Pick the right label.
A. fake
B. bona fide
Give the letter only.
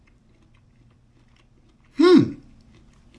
B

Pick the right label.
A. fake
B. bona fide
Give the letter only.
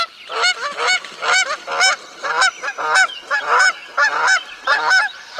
B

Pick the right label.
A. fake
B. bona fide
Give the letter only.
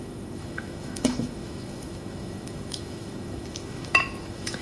A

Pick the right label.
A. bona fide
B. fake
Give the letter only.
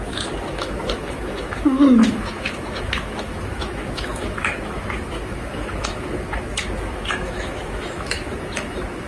B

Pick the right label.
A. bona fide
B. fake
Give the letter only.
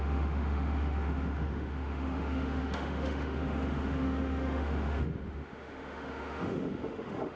B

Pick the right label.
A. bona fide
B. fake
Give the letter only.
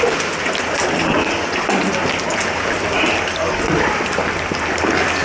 A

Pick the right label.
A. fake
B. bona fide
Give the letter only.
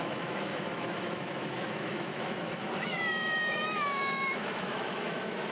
A